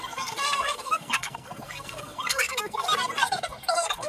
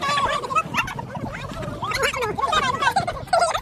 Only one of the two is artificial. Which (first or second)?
first